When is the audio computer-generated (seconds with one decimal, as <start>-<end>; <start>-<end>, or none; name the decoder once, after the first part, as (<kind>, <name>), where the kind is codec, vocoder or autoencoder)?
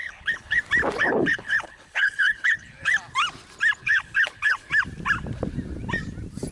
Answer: 0.0-0.6 (codec, HILCodec); 1.0-2.9; 3.8-4.7